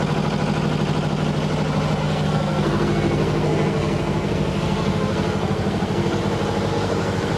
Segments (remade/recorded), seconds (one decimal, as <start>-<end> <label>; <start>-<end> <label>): 0.0-2.0 recorded; 2.0-6.2 remade; 6.2-6.7 recorded; 6.7-7.4 remade

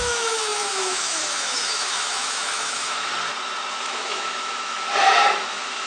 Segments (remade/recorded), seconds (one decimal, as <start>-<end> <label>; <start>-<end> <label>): 0.0-3.1 remade; 3.1-3.7 recorded; 3.7-4.9 remade; 4.9-5.5 recorded; 5.5-5.9 remade

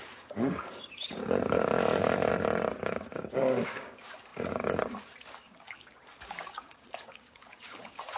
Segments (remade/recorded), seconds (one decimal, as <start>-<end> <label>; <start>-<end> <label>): 0.0-2.3 remade; 2.3-2.8 recorded; 2.8-8.2 remade

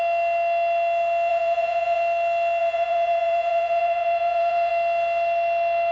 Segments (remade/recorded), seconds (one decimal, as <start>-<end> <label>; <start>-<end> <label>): 0.0-1.3 recorded; 1.3-2.0 remade; 2.0-2.6 recorded; 2.6-4.7 remade; 4.7-5.9 recorded